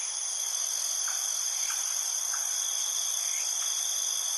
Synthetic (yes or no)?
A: no